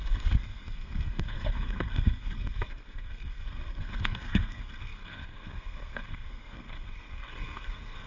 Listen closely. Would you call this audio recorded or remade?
remade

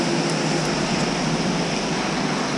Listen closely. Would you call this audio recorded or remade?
recorded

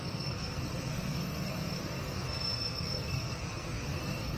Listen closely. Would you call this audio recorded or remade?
remade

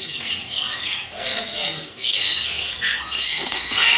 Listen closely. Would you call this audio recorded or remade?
remade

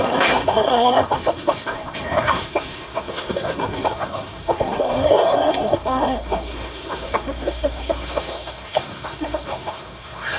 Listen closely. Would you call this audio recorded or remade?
remade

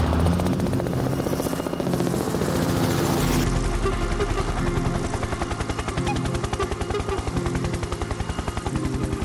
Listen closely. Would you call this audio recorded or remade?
recorded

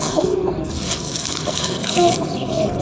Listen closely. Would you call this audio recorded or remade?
remade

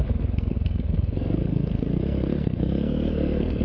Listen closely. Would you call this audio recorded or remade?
remade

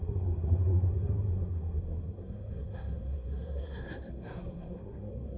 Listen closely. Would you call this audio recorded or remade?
remade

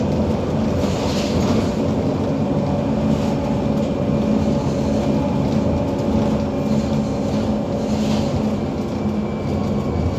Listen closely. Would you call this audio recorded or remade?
recorded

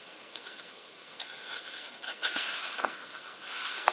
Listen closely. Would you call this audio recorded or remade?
remade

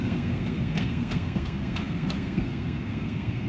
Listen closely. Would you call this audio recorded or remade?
remade